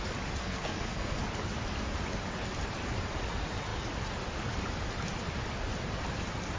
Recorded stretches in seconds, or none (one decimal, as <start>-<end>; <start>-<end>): 0.0-0.4; 1.2-6.6